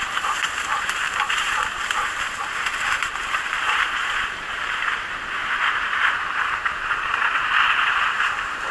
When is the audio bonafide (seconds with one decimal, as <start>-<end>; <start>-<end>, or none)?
none